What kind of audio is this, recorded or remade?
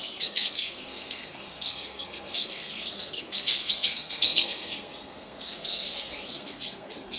remade